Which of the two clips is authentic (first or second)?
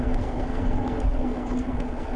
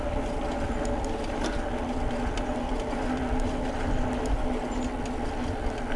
second